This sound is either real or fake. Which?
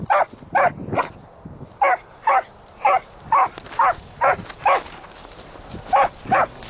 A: real